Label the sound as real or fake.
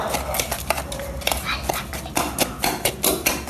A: real